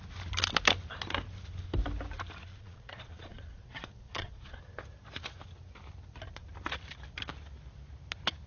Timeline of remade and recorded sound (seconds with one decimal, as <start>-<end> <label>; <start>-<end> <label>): 0.0-2.5 recorded; 2.5-4.6 remade; 4.6-8.5 recorded